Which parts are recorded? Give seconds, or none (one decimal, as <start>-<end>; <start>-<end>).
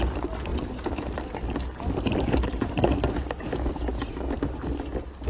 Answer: 0.0-5.3